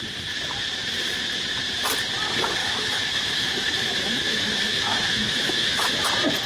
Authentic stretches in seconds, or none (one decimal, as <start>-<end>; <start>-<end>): 0.0-2.6; 6.0-6.5